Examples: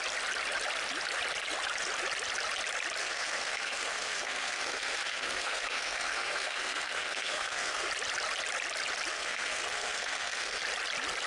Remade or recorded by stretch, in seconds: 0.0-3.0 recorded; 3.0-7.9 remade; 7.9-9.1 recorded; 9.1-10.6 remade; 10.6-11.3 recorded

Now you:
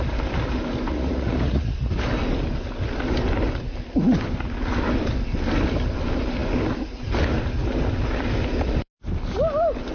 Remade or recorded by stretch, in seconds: 0.0-0.9 recorded; 0.9-1.9 remade; 1.9-9.9 recorded

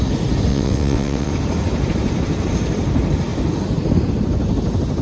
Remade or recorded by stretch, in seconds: 0.0-0.5 recorded; 0.5-1.3 remade; 1.3-5.0 recorded

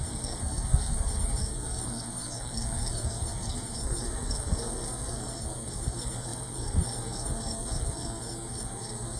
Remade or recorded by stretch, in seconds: 0.0-9.2 remade

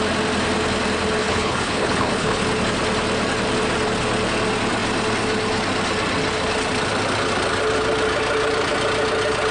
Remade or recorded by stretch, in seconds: 0.0-1.2 recorded; 1.2-2.4 remade; 2.4-9.5 recorded

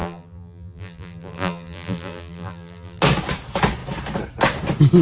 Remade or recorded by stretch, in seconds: 0.0-3.0 remade; 3.0-5.0 recorded

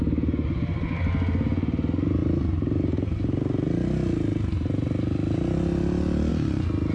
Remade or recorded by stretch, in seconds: 0.0-6.9 recorded

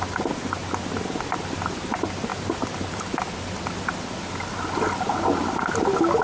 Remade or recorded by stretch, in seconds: 0.0-6.2 recorded